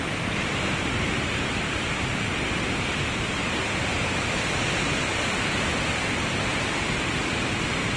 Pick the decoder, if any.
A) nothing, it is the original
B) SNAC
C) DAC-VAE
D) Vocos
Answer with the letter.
A